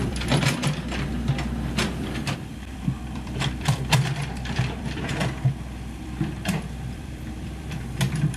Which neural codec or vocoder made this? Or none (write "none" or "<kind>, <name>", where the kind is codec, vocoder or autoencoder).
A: vocoder, BigVGAN v2